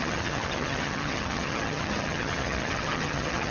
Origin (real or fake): fake